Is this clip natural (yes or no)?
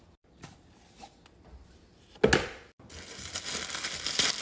yes